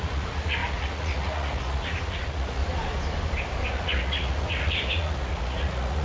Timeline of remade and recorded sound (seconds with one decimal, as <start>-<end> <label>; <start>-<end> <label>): 0.0-2.6 remade; 2.6-3.7 recorded; 3.7-6.0 remade